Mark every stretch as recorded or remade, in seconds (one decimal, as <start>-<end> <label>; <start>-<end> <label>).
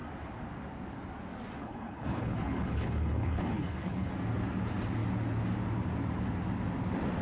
0.0-1.6 recorded; 1.6-4.1 remade; 4.1-7.2 recorded